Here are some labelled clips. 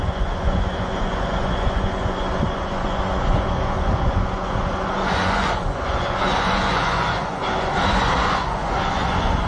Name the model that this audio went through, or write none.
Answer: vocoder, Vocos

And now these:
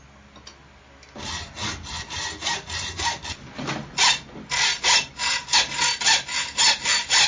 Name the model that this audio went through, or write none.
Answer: none